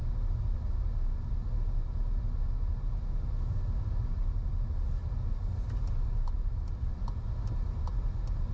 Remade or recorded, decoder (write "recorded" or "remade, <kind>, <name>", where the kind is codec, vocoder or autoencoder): recorded